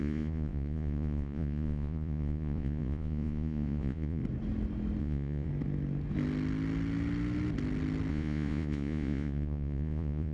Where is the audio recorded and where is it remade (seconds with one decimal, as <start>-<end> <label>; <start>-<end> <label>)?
0.0-4.2 remade; 4.2-5.0 recorded; 5.0-5.5 remade; 5.5-8.1 recorded; 8.1-10.3 remade